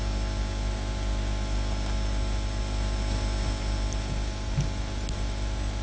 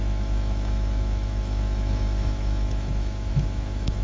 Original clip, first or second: first